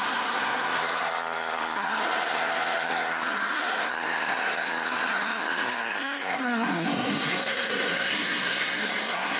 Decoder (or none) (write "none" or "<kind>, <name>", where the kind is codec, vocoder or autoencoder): codec, SNAC